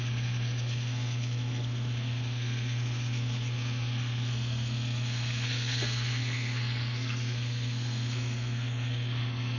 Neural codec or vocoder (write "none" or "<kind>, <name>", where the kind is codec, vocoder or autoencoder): codec, SNAC